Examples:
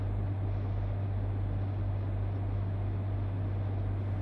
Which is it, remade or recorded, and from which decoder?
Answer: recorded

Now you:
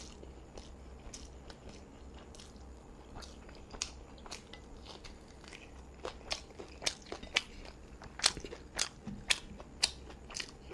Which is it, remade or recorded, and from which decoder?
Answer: recorded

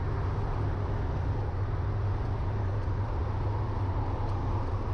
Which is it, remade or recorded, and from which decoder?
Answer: recorded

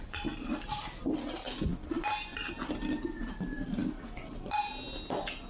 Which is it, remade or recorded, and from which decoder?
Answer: recorded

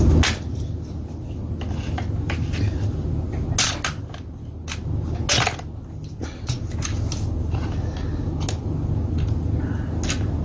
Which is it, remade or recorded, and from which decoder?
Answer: recorded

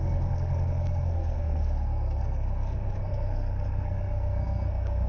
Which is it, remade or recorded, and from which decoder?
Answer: remade, codec, SNAC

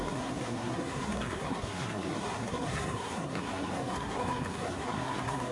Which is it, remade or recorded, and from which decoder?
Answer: remade, codec, SNAC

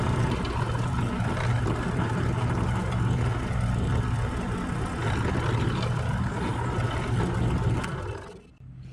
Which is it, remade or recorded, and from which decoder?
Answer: recorded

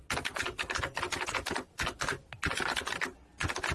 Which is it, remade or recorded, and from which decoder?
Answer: recorded